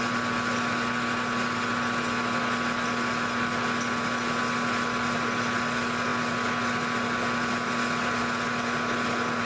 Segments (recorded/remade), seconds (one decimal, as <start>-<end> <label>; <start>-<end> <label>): 0.0-9.4 recorded